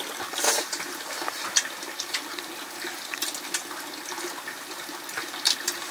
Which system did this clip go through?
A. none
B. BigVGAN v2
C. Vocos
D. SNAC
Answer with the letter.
A